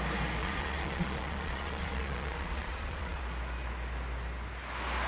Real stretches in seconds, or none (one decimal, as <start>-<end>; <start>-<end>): 0.0-0.4; 3.2-5.1